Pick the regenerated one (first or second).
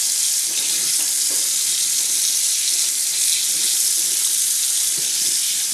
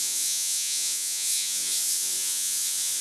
second